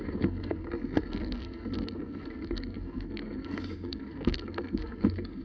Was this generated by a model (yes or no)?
yes